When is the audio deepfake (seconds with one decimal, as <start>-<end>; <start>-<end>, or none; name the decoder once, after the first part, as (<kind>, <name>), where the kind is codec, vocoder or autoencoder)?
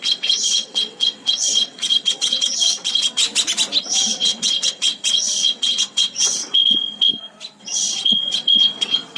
0.0-3.2 (vocoder, WaveNeXt); 3.8-7.1; 7.6-9.2